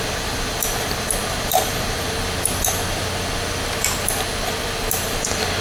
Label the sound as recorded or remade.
recorded